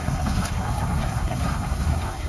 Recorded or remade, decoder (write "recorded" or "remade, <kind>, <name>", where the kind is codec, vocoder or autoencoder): remade, codec, SNAC